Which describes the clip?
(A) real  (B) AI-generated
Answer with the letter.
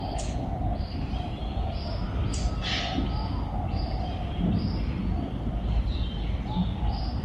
A